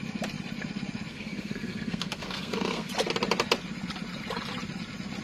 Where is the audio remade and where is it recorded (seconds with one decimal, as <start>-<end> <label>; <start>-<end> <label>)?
0.0-1.1 recorded; 1.1-2.9 remade; 2.9-5.2 recorded